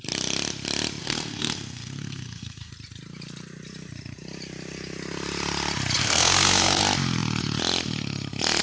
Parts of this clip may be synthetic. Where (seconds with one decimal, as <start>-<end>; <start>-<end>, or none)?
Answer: 1.0-2.7; 6.0-6.8